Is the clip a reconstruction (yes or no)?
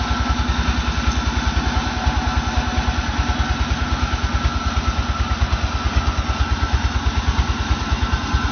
no